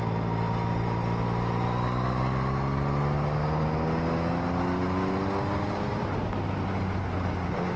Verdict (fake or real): real